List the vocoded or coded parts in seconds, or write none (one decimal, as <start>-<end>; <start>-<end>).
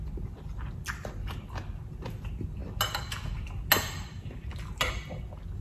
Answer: none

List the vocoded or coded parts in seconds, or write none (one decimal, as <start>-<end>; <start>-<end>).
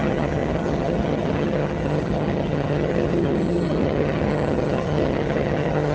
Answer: 0.0-5.9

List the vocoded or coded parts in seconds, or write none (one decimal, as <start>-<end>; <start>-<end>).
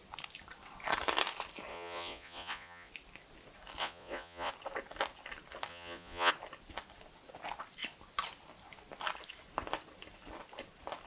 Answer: 1.7-2.9; 3.8-4.5; 5.7-6.3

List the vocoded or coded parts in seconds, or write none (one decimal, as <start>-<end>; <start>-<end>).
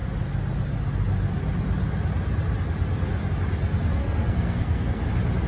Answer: 4.0-5.0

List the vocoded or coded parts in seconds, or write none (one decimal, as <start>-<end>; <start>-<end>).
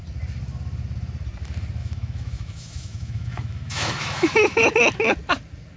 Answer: 1.8-4.7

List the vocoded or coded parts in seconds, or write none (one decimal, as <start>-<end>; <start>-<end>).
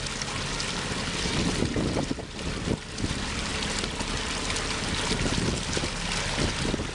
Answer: none